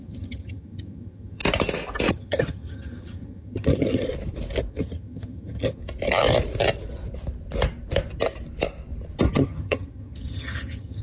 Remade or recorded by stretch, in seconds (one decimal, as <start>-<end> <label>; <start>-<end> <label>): 0.0-1.4 remade; 1.4-2.1 recorded; 2.1-4.1 remade; 4.1-4.7 recorded; 4.7-5.8 remade; 5.8-9.3 recorded; 9.3-11.0 remade